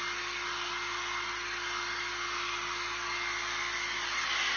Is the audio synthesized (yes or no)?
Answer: no